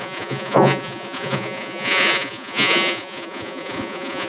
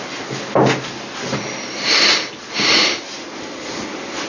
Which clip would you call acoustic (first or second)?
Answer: second